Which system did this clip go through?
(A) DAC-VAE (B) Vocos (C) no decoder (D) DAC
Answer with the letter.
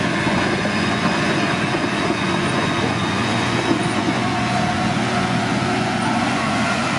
B